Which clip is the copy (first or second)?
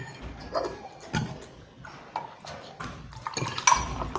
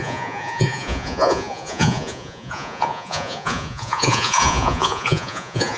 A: second